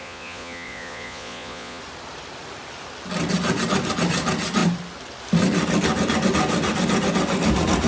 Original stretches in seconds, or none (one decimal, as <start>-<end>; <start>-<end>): 1.8-7.9